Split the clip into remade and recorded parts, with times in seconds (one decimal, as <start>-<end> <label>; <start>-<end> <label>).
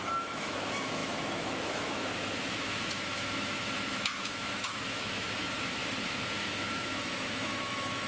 0.0-5.8 remade; 5.8-6.4 recorded; 6.4-8.1 remade